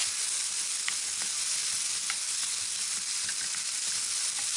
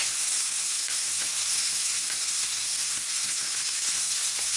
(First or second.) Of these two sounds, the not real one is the second